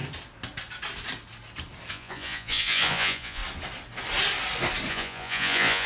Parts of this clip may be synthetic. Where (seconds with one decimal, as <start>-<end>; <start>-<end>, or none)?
1.9-3.4; 4.9-5.9